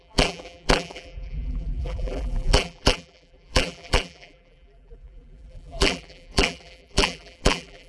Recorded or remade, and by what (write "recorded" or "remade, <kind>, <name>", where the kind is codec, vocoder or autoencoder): remade, vocoder, BigVGAN v2